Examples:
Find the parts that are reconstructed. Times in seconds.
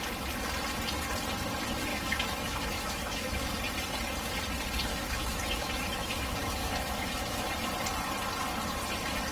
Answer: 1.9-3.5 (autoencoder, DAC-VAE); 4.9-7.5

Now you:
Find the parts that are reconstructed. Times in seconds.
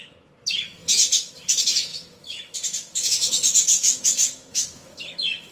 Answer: 0.0-5.5 (autoencoder, DAC-VAE)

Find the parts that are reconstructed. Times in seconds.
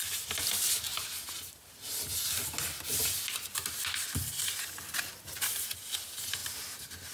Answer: none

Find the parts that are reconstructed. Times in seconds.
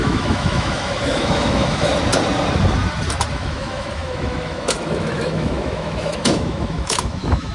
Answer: 0.0-1.9 (autoencoder, DAC-VAE); 3.3-7.5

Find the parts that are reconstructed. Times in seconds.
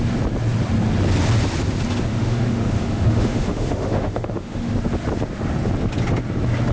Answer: 2.1-4.7 (autoencoder, DAC-VAE)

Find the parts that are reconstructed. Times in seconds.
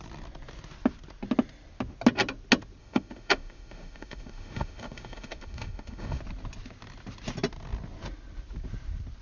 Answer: 2.8-6.2 (autoencoder, DAC-VAE)